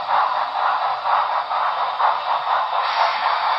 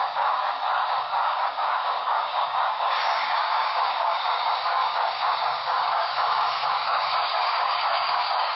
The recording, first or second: first